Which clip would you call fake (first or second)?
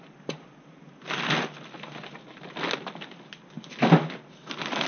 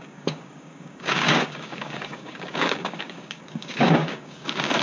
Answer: second